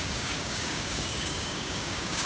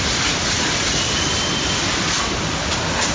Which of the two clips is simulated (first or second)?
first